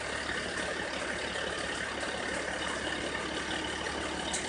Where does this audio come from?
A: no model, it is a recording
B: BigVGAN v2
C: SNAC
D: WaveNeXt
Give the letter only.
A